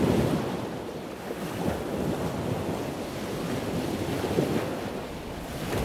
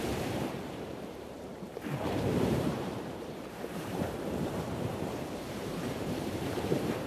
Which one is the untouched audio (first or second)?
first